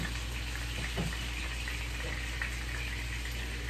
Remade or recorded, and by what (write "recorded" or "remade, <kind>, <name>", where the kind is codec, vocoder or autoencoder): recorded